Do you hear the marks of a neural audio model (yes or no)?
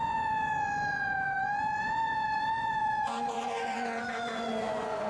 yes